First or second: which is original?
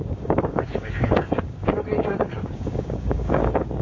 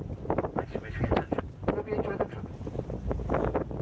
second